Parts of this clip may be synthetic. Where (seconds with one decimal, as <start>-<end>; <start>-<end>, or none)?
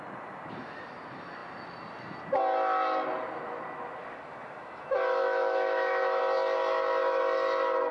4.0-6.2